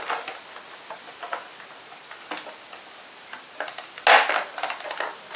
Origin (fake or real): real